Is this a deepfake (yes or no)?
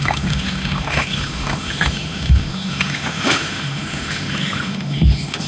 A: yes